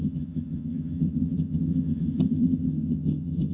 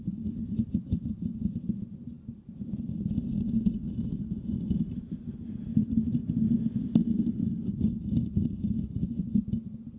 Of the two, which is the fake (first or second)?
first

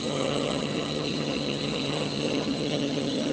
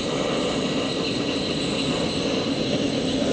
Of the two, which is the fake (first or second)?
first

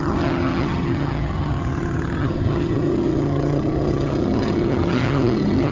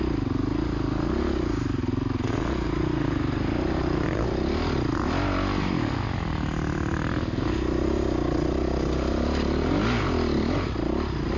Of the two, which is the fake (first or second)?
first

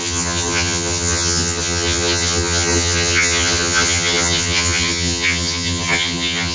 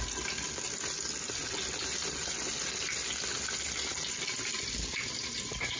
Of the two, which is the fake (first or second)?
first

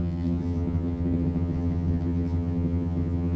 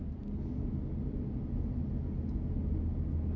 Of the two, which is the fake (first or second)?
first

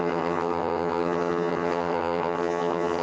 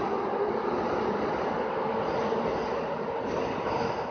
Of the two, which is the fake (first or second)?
first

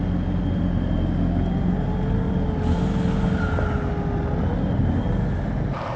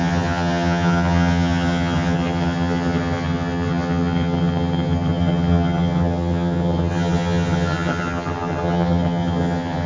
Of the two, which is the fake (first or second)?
second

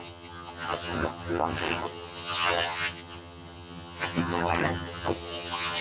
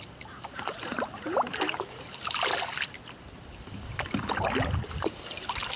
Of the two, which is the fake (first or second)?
first